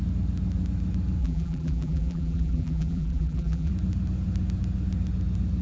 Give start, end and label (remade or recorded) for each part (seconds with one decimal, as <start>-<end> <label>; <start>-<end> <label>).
0.0-1.2 recorded; 1.2-3.7 remade; 3.7-5.6 recorded